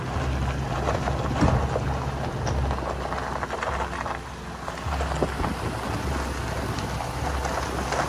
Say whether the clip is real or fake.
real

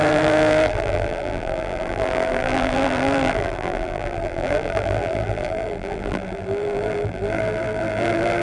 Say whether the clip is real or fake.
fake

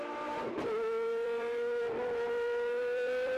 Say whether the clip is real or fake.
fake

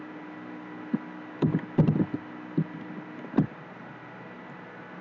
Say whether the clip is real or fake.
real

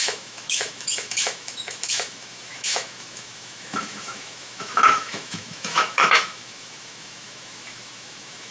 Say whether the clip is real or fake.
fake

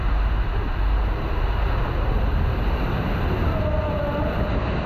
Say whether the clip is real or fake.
real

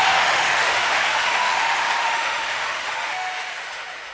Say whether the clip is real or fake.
fake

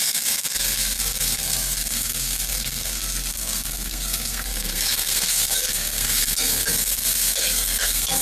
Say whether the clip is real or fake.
fake